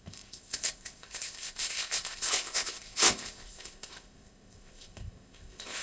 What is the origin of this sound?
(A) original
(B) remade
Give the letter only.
B